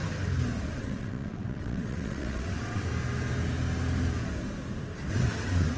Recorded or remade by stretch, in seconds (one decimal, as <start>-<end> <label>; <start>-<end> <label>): 0.0-0.7 recorded; 0.7-2.9 remade; 2.9-5.1 recorded; 5.1-5.8 remade